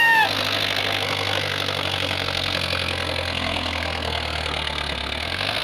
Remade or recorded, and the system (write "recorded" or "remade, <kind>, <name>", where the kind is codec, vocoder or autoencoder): remade, codec, SNAC